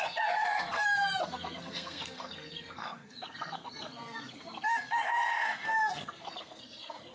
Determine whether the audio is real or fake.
fake